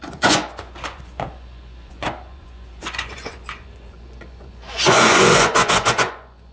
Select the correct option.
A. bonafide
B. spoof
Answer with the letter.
B